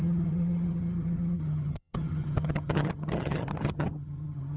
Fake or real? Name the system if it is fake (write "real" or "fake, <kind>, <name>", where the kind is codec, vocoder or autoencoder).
fake, vocoder, HiFi-GAN